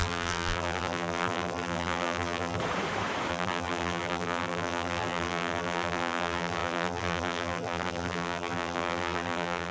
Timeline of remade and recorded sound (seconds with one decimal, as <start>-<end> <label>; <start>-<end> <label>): 0.0-2.6 remade; 2.6-3.3 recorded; 3.3-9.7 remade